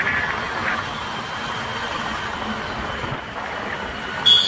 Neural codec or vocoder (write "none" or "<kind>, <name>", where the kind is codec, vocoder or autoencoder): none